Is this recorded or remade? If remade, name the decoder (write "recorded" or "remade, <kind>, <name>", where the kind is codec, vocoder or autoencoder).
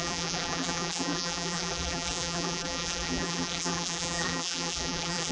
remade, vocoder, BigVGAN v2